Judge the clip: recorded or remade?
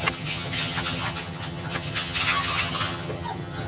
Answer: remade